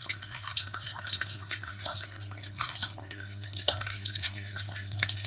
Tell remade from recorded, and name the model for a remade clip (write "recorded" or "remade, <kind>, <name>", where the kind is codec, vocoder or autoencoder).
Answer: remade, codec, SNAC